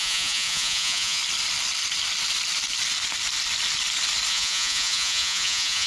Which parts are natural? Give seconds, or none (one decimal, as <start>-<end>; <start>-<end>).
1.2-4.3